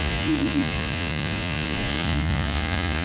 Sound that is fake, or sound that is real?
fake